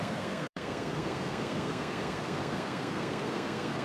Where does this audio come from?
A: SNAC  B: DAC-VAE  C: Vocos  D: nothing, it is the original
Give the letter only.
A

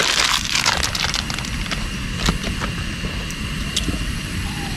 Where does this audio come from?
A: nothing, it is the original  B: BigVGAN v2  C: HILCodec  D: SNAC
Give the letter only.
A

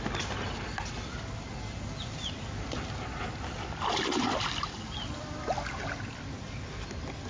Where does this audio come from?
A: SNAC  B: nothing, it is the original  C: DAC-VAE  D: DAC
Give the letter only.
B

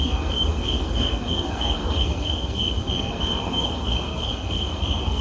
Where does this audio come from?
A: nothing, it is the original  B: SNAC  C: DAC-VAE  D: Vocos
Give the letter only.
B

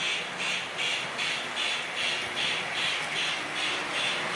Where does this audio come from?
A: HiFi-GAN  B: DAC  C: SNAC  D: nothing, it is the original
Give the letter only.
D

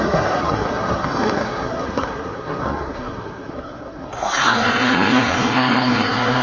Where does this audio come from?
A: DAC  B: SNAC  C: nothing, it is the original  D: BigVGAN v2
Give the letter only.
B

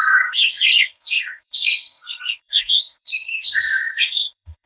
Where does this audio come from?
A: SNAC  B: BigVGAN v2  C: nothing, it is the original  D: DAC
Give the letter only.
A